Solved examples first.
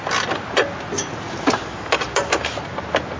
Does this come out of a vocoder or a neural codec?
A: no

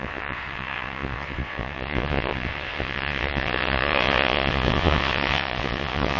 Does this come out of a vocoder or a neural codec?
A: yes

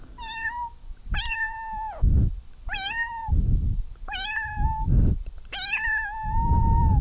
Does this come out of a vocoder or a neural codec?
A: yes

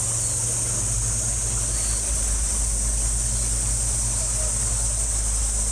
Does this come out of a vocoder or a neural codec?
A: no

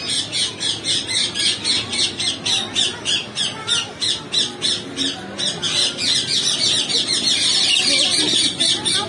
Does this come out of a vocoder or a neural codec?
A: no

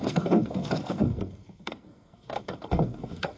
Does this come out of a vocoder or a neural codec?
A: yes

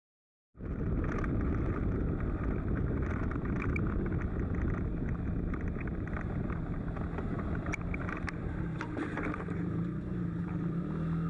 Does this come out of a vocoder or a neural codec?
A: no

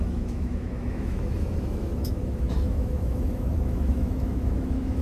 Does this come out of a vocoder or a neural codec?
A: yes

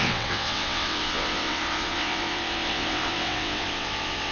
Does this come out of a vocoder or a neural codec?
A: yes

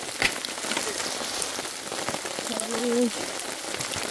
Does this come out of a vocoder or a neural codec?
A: no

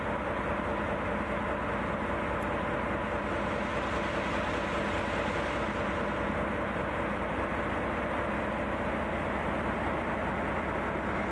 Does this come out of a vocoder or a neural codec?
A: no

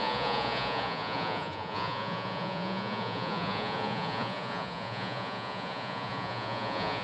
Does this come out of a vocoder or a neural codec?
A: yes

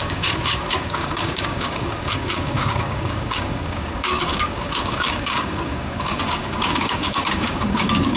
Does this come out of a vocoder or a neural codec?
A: yes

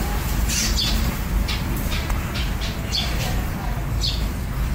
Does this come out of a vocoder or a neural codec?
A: no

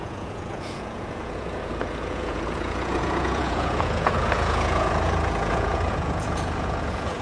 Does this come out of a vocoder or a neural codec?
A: yes